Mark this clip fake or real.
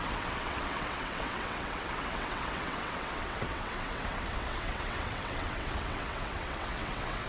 fake